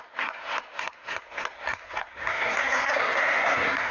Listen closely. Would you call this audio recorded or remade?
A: remade